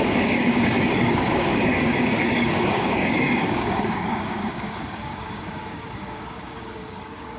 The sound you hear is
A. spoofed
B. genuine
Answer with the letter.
A